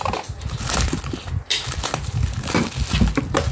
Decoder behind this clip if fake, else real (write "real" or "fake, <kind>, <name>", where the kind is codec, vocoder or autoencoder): real